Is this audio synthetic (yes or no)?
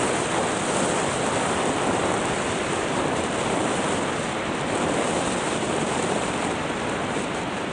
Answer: yes